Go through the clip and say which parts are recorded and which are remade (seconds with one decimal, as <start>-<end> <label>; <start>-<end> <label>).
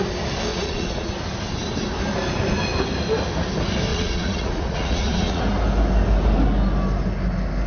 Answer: 0.0-0.5 recorded; 0.5-1.1 remade; 1.1-3.9 recorded; 3.9-5.4 remade; 5.4-7.7 recorded